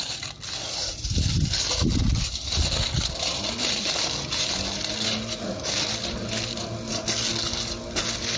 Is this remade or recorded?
recorded